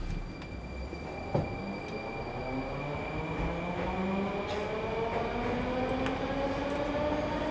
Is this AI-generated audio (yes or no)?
no